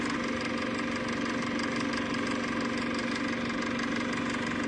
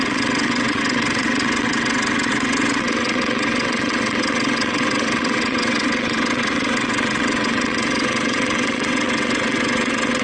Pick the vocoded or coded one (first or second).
second